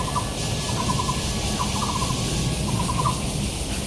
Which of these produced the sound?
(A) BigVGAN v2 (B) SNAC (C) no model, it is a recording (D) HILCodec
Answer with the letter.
C